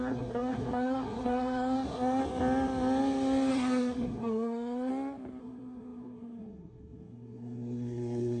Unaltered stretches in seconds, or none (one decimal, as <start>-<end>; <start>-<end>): 2.2-3.5; 4.9-5.4